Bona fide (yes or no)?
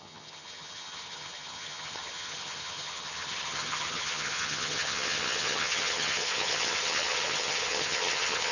no